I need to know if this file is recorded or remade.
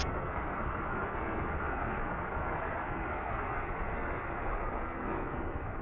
remade